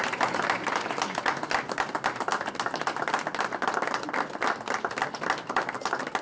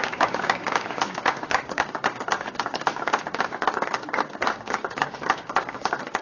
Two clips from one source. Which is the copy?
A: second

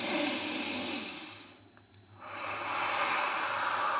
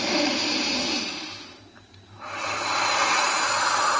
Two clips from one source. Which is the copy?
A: second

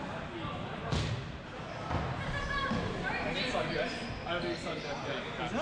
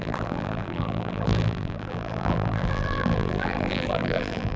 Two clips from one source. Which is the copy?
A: second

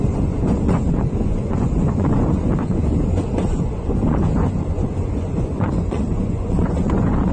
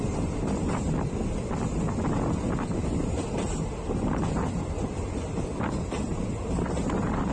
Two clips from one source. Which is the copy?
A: first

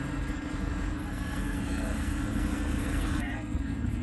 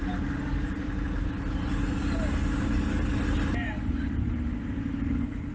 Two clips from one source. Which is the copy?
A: first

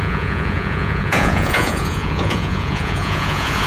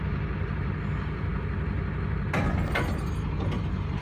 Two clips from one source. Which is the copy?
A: first